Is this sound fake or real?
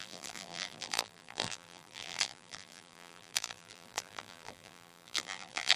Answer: fake